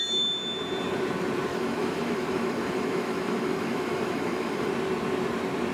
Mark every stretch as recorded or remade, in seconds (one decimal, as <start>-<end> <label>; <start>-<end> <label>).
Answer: 0.0-1.5 recorded; 1.5-4.7 remade; 4.7-5.7 recorded